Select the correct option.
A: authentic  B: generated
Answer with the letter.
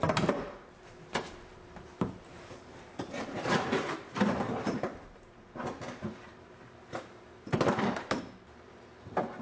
B